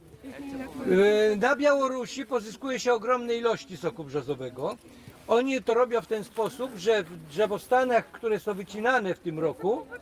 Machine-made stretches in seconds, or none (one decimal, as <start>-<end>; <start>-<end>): 5.2-5.7